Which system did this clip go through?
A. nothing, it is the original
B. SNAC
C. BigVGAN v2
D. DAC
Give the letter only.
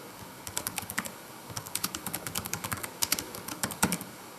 D